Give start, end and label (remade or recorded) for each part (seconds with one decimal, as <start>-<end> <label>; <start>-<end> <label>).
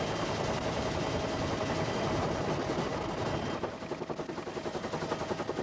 0.0-5.6 recorded